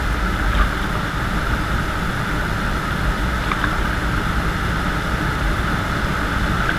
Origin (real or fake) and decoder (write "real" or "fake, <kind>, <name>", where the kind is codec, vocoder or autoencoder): real